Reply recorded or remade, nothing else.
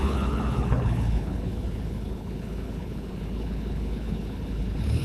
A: remade